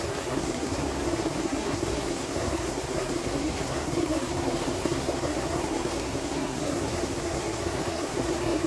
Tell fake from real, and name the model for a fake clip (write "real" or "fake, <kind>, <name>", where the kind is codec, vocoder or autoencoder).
fake, codec, SNAC